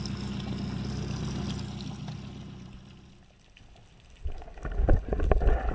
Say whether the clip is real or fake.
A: real